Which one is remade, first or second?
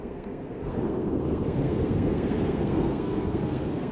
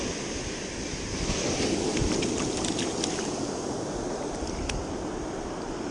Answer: first